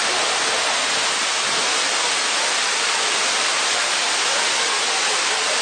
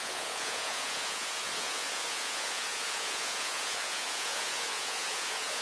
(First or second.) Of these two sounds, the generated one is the second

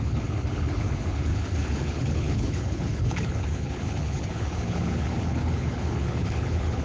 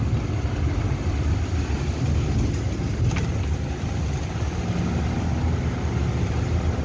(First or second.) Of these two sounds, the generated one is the first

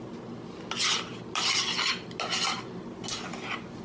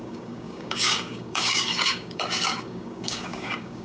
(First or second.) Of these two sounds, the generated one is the second